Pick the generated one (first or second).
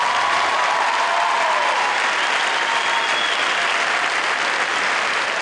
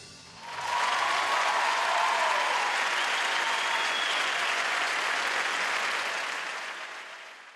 second